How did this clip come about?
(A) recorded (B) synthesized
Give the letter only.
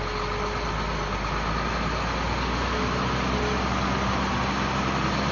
A